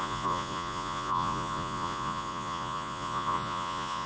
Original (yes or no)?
no